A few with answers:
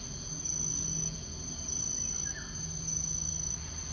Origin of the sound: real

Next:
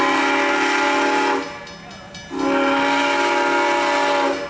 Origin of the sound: real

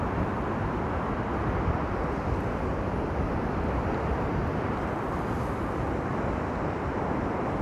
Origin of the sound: real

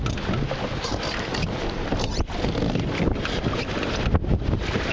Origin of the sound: real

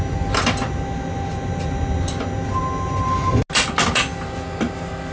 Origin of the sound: real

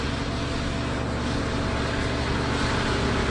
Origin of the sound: real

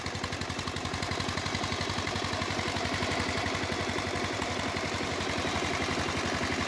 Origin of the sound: real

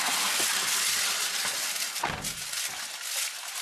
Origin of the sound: real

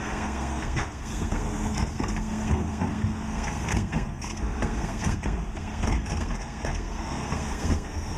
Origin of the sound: fake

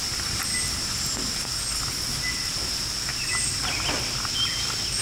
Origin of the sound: real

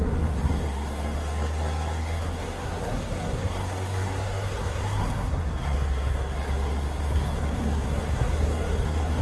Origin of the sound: fake